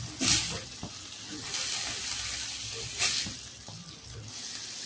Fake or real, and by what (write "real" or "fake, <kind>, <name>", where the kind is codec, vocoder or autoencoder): real